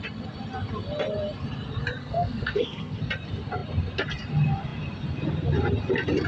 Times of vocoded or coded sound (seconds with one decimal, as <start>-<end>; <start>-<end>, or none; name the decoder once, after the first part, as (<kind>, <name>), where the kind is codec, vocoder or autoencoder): 2.0-3.0 (codec, SNAC)